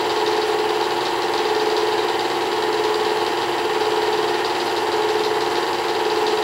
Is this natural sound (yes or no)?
yes